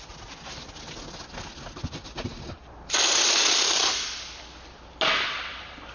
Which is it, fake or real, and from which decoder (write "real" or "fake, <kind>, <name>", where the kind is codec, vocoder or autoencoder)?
real